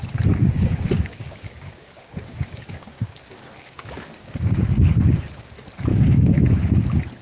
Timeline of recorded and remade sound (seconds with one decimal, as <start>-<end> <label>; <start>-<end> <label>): 0.0-0.4 recorded; 0.4-4.7 remade; 4.7-5.9 recorded; 5.9-6.5 remade; 6.5-7.2 recorded